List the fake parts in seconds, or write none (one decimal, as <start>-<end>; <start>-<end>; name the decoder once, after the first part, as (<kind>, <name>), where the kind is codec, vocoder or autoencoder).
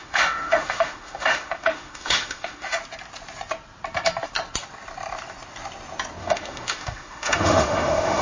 0.0-2.8 (autoencoder, DAC-VAE); 6.2-8.2